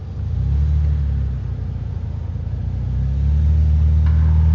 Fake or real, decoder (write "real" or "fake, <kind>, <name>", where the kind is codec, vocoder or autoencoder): real